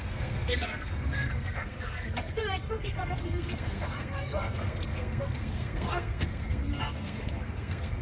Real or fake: fake